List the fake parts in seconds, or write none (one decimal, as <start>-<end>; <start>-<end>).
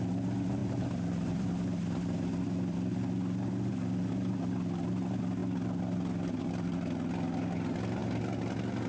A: 0.6-1.5